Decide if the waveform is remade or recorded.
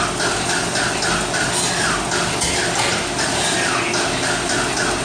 recorded